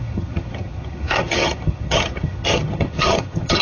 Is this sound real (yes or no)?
no